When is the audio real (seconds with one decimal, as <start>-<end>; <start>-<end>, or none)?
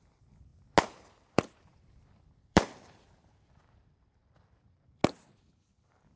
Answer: 0.5-1.1; 5.0-6.2